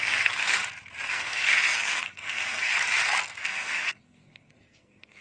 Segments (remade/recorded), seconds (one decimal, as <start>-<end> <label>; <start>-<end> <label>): 0.0-0.6 remade; 0.6-1.1 recorded; 1.1-2.7 remade; 2.7-3.2 recorded; 3.2-5.2 remade